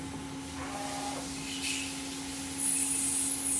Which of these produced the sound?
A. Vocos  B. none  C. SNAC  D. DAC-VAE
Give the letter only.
B